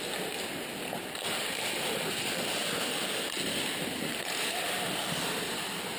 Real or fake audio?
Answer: real